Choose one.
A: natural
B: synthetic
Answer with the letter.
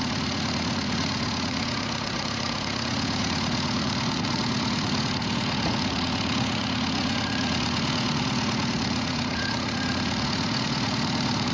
B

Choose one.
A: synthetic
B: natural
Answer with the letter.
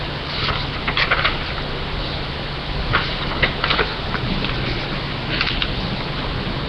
B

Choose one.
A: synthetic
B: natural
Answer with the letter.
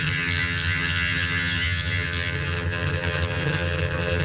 A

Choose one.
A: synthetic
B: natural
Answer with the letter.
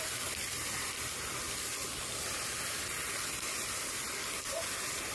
A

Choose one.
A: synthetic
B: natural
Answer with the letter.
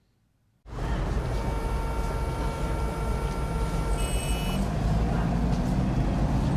B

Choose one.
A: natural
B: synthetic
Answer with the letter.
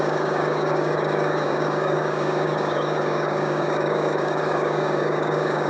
B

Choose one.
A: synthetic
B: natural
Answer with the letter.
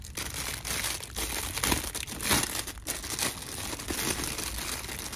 B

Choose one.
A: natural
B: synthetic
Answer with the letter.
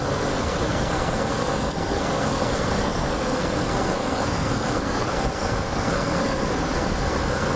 B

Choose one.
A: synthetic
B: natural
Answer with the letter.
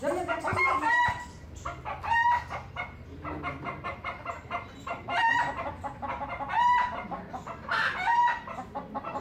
A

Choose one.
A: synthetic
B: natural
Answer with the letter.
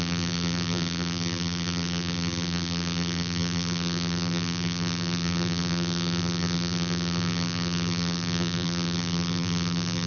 A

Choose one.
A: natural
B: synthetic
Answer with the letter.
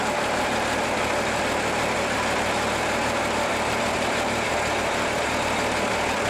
A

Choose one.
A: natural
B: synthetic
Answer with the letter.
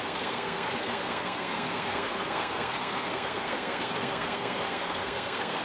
B